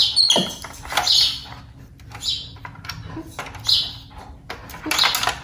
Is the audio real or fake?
real